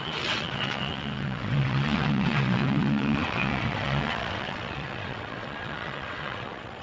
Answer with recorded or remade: remade